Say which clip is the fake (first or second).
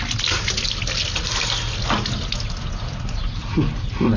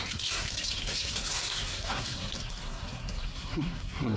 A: second